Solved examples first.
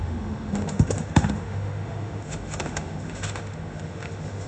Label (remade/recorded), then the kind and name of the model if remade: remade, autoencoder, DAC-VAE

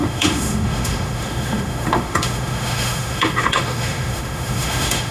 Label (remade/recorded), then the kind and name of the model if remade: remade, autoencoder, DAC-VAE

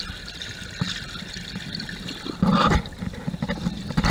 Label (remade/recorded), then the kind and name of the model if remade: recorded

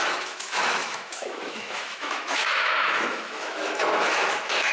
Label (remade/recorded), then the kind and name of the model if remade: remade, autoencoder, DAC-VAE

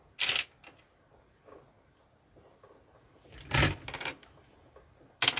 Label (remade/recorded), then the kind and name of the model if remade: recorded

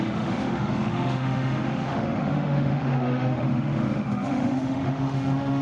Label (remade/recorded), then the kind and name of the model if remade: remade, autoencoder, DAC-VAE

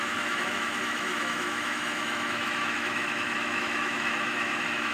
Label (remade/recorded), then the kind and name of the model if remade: remade, autoencoder, DAC-VAE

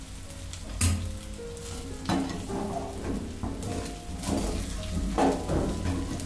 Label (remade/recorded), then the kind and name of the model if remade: recorded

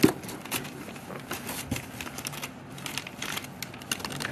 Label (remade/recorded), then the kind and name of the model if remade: recorded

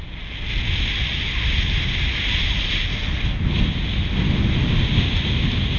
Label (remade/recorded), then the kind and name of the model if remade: recorded